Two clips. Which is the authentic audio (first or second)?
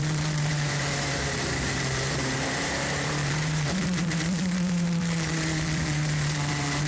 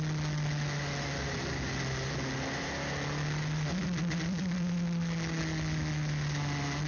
second